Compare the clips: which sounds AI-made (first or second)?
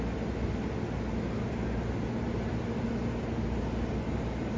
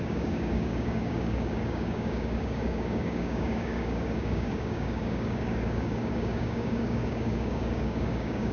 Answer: second